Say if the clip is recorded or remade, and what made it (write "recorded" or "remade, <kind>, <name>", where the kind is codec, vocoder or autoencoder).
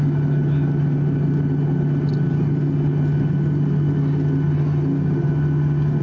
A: recorded